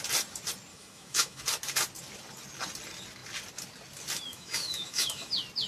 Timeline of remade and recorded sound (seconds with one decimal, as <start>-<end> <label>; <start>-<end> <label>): 0.0-0.7 recorded; 0.7-1.4 remade; 1.4-4.3 recorded; 4.3-5.3 remade; 5.3-5.7 recorded